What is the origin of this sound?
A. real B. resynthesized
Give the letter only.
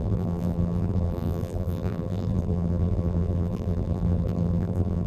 B